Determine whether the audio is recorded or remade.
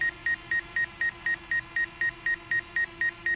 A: recorded